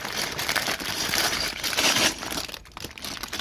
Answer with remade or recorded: recorded